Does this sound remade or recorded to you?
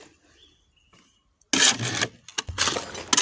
recorded